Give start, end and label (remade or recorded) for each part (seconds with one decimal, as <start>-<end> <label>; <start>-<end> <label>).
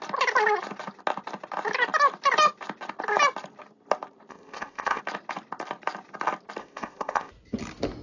0.0-4.3 recorded; 4.3-5.0 remade; 5.0-6.6 recorded; 6.6-7.3 remade; 7.3-8.0 recorded